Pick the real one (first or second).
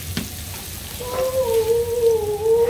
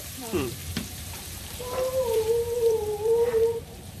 first